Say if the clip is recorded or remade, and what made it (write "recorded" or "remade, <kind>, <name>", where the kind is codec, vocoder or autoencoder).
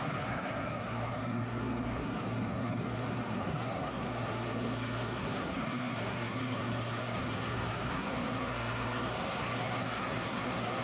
remade, codec, SNAC